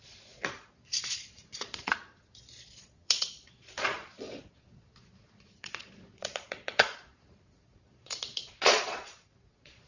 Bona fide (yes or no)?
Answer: no